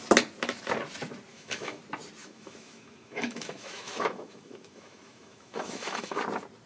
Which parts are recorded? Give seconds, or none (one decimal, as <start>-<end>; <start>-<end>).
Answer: 0.0-1.3; 1.8-2.2; 6.2-6.7